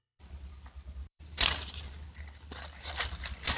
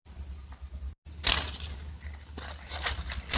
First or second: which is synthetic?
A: first